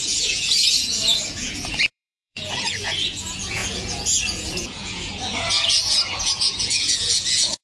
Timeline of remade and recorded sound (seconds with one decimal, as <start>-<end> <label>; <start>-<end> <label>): 0.0-7.6 remade